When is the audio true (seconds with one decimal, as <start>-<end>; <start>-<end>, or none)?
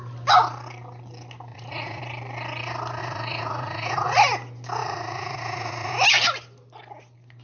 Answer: 0.0-1.5; 2.0-3.0; 4.2-4.8; 5.9-7.4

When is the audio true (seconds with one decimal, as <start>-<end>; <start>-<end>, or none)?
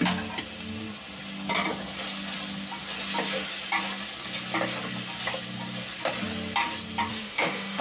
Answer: 0.0-7.1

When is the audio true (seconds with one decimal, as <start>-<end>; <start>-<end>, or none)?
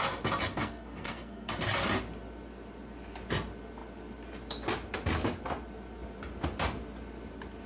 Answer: 0.0-0.5; 1.5-7.7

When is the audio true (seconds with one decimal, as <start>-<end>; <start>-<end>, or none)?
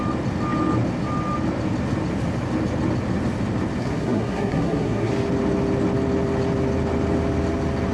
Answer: 0.0-3.8; 5.1-7.9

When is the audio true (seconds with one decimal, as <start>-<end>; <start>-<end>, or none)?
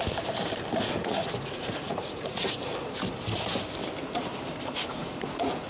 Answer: 0.0-1.0; 2.5-4.9